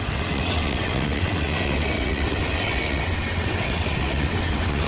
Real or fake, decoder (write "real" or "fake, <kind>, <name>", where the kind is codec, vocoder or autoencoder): fake, vocoder, WaveNeXt